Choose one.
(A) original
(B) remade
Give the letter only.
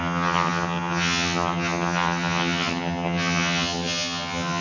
B